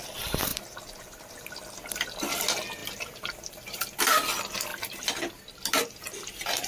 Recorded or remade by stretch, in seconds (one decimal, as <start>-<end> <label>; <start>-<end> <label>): 0.0-0.5 recorded; 0.5-1.3 remade; 1.3-2.8 recorded; 2.8-4.0 remade; 4.0-4.7 recorded; 4.7-5.4 remade; 5.4-6.7 recorded